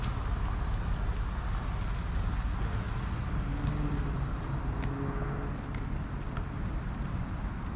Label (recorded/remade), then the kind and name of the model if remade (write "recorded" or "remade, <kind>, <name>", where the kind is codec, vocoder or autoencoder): recorded